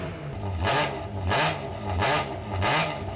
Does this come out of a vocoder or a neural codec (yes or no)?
no